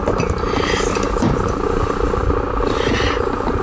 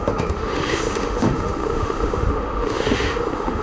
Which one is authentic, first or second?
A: first